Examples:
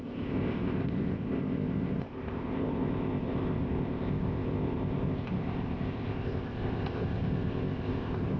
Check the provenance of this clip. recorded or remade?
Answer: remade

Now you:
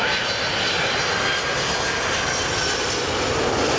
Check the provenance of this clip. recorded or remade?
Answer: recorded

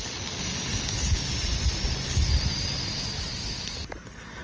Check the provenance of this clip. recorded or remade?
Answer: recorded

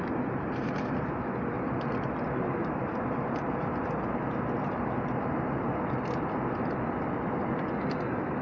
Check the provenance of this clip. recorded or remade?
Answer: recorded